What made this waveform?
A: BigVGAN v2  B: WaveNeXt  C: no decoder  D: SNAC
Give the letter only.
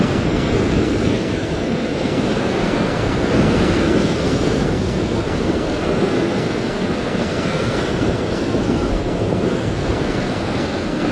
D